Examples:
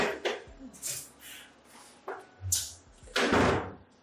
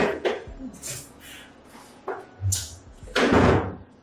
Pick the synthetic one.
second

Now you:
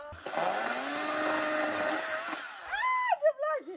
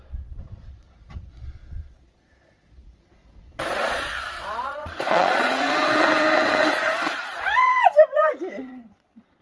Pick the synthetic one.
second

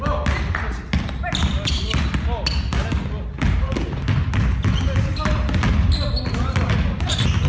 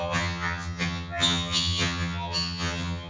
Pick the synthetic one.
second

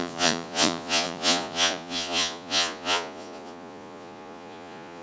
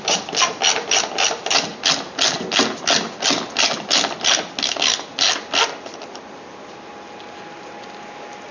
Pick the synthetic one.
first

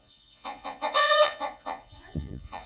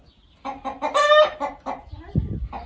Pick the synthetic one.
first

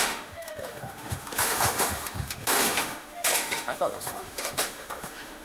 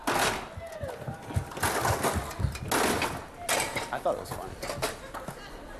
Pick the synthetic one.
first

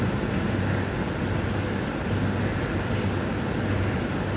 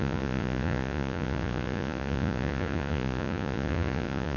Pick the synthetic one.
second